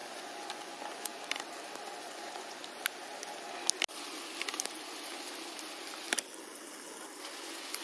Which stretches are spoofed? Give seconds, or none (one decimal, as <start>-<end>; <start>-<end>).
0.0-1.1; 2.0-2.6; 7.3-7.8